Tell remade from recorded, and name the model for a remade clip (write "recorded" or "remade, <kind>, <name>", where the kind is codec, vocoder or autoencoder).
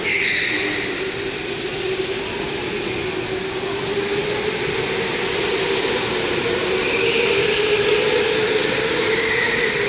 recorded